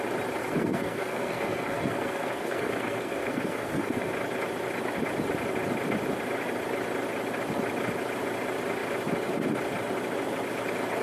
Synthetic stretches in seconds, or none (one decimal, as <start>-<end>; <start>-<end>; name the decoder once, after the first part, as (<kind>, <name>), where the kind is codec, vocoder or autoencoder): 0.4-4.1 (codec, SNAC)